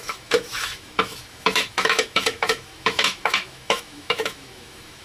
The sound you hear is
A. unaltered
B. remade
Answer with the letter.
B